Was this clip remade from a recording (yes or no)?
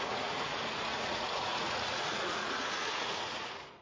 yes